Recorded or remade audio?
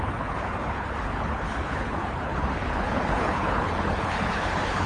remade